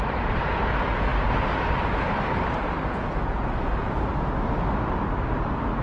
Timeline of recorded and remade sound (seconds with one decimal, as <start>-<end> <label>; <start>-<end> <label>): 0.0-5.8 recorded